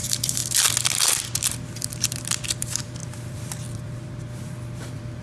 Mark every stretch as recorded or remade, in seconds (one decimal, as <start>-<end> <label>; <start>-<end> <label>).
0.0-0.4 remade; 0.4-1.3 recorded; 1.3-5.2 remade